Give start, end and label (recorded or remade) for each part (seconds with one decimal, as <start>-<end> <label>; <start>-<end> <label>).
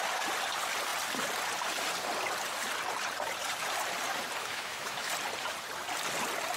0.0-4.4 recorded; 4.4-5.1 remade; 5.1-6.6 recorded